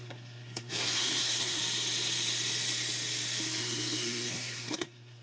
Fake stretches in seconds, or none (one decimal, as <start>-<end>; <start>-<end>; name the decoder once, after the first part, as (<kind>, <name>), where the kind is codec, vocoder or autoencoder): 0.0-1.6 (codec, SNAC); 3.6-5.2